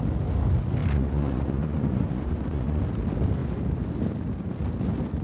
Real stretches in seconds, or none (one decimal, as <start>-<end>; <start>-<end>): 0.0-0.8; 2.8-5.2